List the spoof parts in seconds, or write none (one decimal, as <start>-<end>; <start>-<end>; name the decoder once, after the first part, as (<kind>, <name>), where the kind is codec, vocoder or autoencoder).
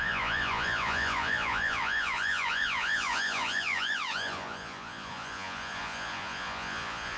0.0-7.2 (vocoder, Vocos)